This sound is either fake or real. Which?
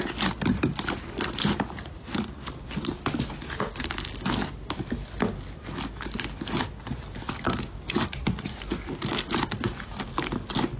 real